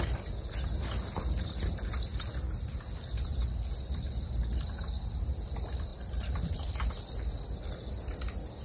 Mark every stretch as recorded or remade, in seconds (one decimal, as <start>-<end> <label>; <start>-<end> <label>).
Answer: 0.0-5.9 recorded; 5.9-7.0 remade; 7.0-8.6 recorded